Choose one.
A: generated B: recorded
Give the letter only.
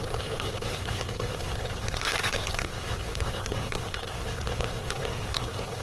A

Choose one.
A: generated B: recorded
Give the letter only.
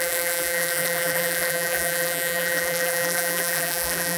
A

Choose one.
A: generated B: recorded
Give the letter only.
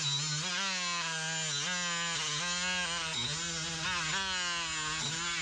B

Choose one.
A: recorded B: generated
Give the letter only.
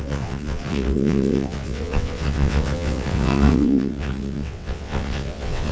B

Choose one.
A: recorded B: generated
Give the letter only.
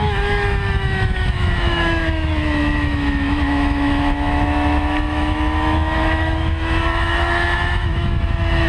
B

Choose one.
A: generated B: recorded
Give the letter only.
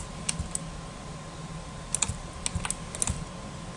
B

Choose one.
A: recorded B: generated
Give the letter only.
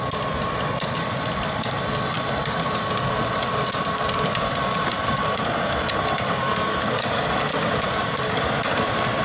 A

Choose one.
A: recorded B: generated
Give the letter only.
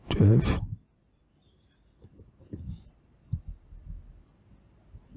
A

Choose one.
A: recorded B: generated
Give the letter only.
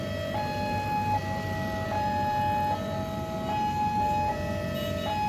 A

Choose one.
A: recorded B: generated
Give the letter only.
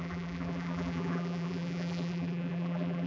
B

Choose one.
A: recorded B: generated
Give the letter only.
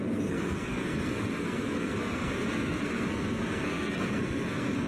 B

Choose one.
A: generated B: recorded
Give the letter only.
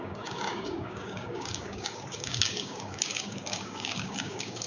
A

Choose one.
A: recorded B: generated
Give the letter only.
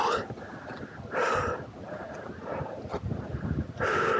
A